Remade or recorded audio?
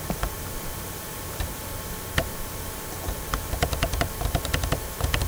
remade